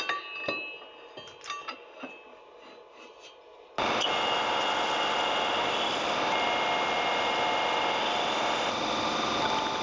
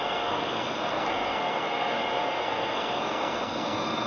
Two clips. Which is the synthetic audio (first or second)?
second